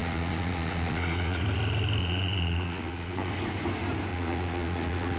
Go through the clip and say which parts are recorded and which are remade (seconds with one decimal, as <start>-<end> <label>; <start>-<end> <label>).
0.0-1.4 remade; 1.4-2.0 recorded; 2.0-3.3 remade; 3.3-4.1 recorded; 4.1-5.2 remade